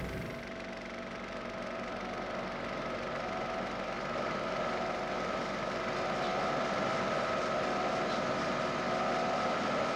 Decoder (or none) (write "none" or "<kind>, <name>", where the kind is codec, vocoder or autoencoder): none